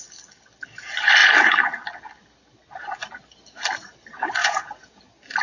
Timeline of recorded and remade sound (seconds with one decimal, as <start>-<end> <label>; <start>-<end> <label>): 0.0-4.4 recorded; 4.4-5.0 remade; 5.0-5.4 recorded